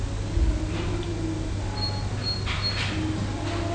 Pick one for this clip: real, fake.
real